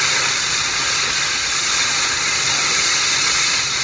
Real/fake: real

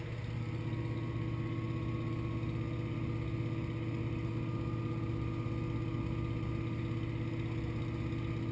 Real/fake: real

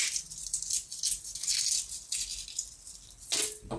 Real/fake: real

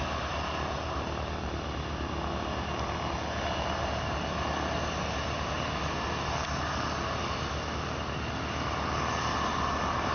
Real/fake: real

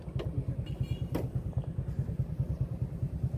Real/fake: real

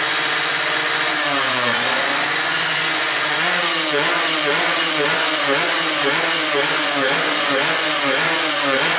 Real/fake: fake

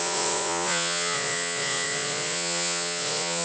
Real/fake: fake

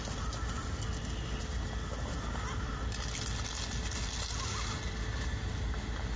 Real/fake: real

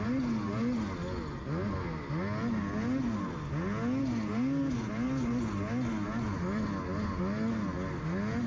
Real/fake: real